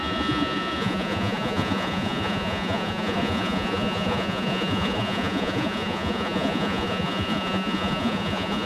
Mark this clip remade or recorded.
remade